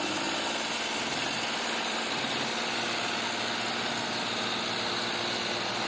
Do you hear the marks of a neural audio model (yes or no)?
no